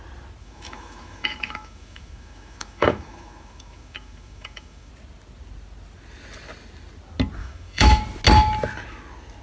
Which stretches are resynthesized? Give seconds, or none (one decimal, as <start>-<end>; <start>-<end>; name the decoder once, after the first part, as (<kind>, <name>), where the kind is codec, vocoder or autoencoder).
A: 0.4-4.9 (autoencoder, DAC-VAE); 7.4-8.0